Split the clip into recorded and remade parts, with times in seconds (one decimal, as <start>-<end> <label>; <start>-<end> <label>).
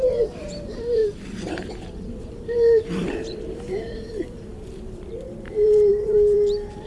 0.0-1.0 remade; 1.0-2.3 recorded; 2.3-6.9 remade